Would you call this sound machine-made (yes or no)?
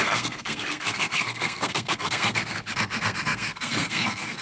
yes